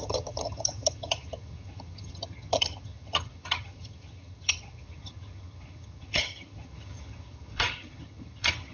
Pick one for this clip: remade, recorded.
remade